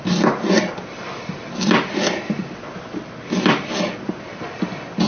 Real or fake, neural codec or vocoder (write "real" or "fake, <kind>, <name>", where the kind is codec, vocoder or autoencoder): real